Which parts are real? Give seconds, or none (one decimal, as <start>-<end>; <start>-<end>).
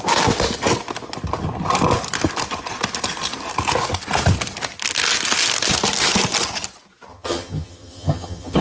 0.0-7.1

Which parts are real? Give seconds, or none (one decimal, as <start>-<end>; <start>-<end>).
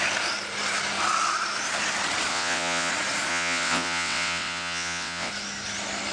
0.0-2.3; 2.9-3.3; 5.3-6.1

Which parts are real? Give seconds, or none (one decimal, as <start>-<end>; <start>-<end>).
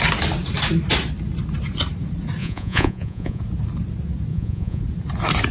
0.0-2.4; 3.4-4.3; 4.8-5.5